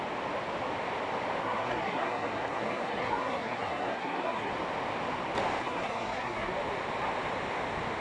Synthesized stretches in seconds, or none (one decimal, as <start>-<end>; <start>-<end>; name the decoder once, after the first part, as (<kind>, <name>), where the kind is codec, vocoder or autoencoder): 1.4-4.5 (codec, SNAC); 5.6-6.5